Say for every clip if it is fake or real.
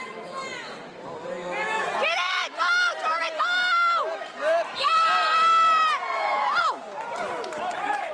fake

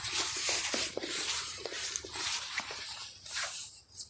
fake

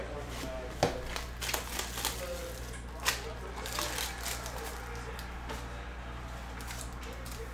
real